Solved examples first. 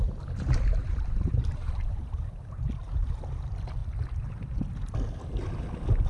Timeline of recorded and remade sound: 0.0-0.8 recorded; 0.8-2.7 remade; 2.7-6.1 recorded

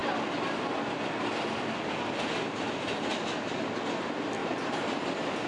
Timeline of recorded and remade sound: 0.0-4.4 recorded; 4.4-4.9 remade; 4.9-5.5 recorded

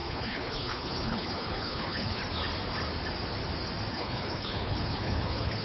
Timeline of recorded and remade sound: 0.0-2.2 remade; 2.2-3.9 recorded; 3.9-5.6 remade

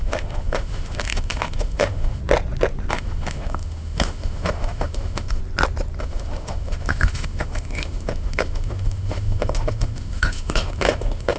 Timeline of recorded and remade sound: 0.0-2.2 remade; 2.2-2.9 recorded; 2.9-5.4 remade; 5.4-6.0 recorded; 6.0-11.4 remade

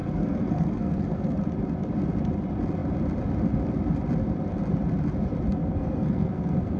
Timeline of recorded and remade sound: 0.0-1.4 remade; 1.4-5.5 recorded; 5.5-6.8 remade